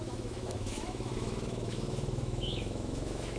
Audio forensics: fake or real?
fake